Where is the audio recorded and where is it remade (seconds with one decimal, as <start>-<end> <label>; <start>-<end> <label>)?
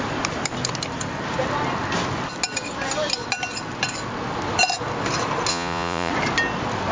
0.0-5.5 recorded; 5.5-6.1 remade; 6.1-6.9 recorded